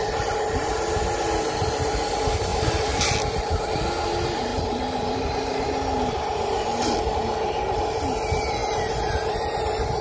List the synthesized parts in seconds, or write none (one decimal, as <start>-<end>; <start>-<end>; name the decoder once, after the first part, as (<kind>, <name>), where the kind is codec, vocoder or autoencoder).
2.5-3.7 (vocoder, BigVGAN v2); 4.5-7.1